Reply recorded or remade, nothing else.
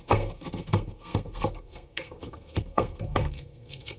remade